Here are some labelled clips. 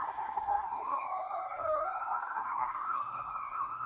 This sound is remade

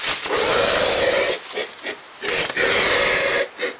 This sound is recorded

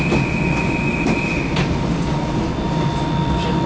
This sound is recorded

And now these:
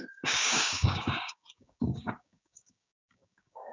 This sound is remade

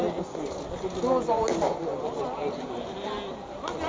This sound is recorded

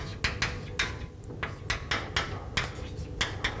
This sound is recorded